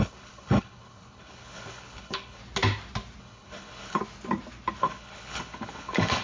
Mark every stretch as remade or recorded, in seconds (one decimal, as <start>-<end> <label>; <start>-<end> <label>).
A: 0.0-2.4 remade; 2.4-3.2 recorded; 3.2-4.0 remade; 4.0-4.8 recorded; 4.8-6.2 remade